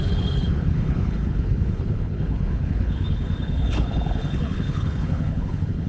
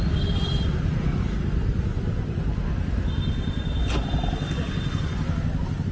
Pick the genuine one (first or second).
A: second